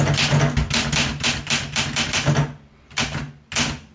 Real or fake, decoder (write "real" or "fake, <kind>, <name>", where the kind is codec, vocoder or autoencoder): real